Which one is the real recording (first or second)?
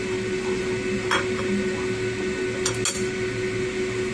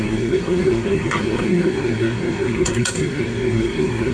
first